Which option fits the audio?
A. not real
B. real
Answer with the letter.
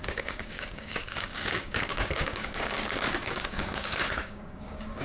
A